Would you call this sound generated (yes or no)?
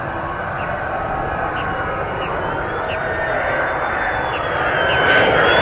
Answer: no